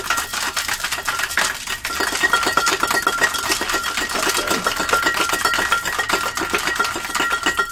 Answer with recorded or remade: recorded